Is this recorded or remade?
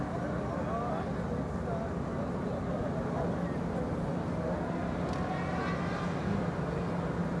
recorded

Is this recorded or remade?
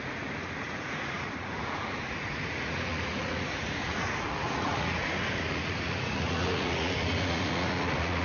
remade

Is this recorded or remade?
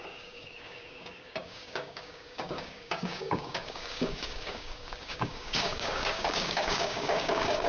remade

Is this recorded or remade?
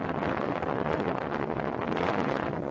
remade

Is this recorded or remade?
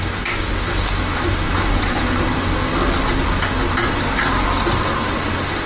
recorded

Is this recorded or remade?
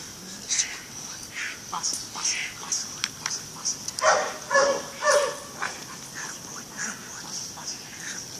recorded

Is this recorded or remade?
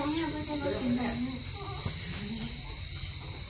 recorded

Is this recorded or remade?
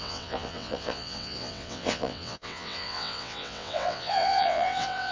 remade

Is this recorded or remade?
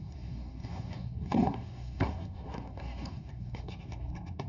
remade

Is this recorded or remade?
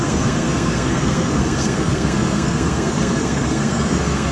remade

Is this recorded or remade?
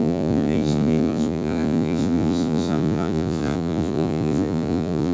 remade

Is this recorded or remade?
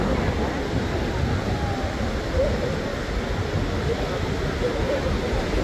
recorded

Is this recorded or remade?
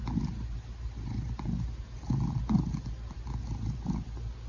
recorded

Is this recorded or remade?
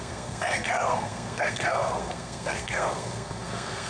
remade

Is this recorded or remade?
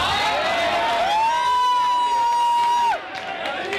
recorded